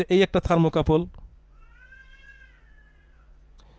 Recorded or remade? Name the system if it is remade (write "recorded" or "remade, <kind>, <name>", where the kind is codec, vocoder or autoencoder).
remade, vocoder, Vocos